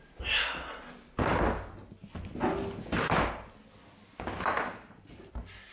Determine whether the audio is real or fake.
real